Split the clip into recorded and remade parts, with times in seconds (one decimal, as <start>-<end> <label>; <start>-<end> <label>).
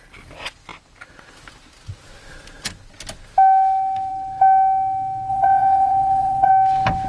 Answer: 0.0-5.3 recorded; 5.3-6.5 remade; 6.5-7.1 recorded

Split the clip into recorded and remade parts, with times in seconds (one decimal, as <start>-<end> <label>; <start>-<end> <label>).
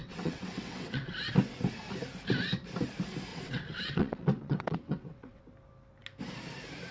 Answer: 0.0-1.3 remade; 1.3-3.3 recorded; 3.3-5.4 remade; 5.4-6.9 recorded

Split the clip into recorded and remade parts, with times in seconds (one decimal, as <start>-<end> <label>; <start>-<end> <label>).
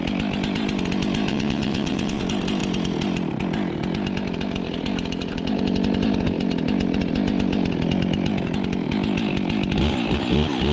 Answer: 0.0-1.3 recorded; 1.3-2.2 remade; 2.2-10.7 recorded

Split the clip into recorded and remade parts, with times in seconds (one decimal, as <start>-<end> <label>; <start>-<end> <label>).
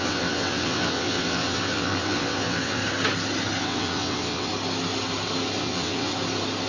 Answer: 0.0-2.8 remade; 2.8-3.6 recorded; 3.6-4.5 remade; 4.5-5.6 recorded; 5.6-6.1 remade; 6.1-6.7 recorded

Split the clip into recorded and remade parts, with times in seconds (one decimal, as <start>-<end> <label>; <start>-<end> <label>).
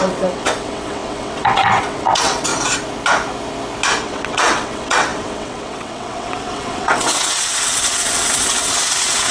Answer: 0.0-2.5 remade; 2.5-4.0 recorded; 4.0-9.3 remade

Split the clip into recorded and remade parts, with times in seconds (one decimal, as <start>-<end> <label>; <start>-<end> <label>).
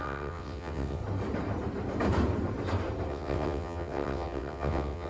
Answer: 0.0-1.0 remade; 1.0-3.1 recorded; 3.1-5.1 remade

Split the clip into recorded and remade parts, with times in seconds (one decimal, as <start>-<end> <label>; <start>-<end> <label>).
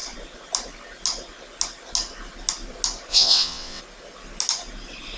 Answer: 0.0-3.1 recorded; 3.1-3.8 remade; 3.8-5.2 recorded